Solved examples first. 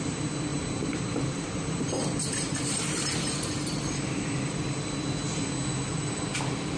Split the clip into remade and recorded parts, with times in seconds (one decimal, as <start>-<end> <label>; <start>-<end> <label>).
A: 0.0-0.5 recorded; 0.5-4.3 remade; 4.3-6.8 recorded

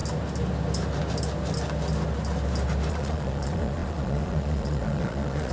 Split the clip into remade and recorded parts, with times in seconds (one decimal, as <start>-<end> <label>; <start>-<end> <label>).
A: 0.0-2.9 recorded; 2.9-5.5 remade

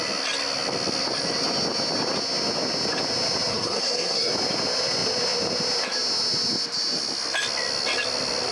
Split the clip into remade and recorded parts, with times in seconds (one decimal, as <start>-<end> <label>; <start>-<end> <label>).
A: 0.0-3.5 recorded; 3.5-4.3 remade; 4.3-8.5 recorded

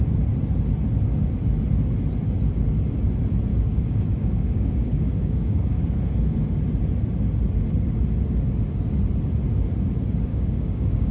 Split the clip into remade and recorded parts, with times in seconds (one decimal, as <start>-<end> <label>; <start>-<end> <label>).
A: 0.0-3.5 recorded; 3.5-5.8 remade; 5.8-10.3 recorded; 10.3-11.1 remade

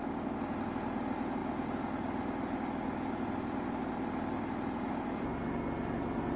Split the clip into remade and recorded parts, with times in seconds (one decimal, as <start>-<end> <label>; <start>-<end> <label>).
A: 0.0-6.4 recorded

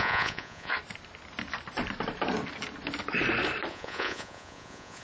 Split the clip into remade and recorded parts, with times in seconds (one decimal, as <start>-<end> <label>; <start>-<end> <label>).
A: 0.0-0.7 remade; 0.7-3.7 recorded; 3.7-5.0 remade